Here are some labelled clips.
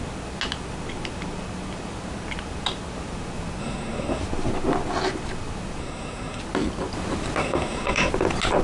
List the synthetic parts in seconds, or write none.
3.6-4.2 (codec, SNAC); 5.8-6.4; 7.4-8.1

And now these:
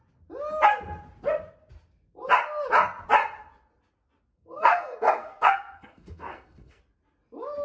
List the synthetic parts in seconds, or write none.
4.3-6.8 (codec, SNAC)

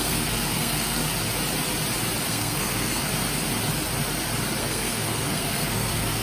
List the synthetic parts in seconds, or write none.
0.0-1.0 (codec, SNAC); 2.3-3.1; 4.6-6.2

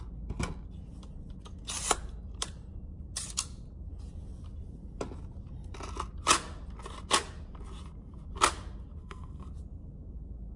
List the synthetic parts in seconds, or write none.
9.0-9.5 (codec, SNAC)

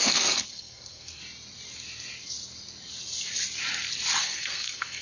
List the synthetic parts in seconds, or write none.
0.0-1.2 (codec, SNAC); 4.2-5.0